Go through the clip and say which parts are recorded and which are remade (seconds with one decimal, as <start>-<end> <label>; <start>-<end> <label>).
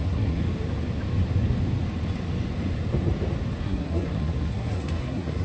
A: 0.0-0.4 remade; 0.4-3.6 recorded; 3.6-5.4 remade